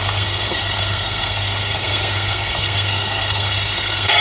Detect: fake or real fake